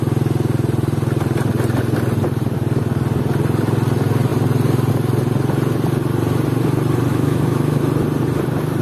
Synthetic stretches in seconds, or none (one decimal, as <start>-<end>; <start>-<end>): 7.1-7.8